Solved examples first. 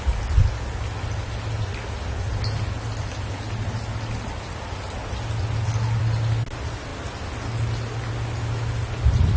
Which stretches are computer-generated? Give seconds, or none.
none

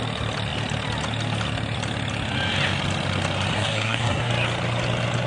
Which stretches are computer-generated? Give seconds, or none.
3.5-4.3 (codec, SNAC)

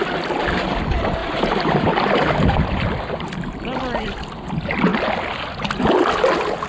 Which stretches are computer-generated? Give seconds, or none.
1.2-4.2 (vocoder, BigVGAN v2)

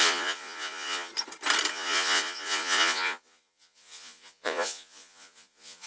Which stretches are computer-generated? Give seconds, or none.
0.0-1.1 (vocoder, Vocos); 1.7-5.9

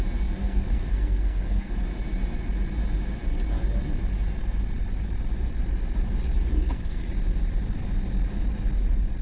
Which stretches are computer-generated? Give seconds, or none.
0.4-1.7 (codec, SNAC); 6.5-7.0